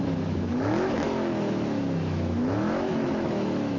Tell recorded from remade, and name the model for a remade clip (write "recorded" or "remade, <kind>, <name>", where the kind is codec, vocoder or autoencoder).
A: remade, autoencoder, DAC-VAE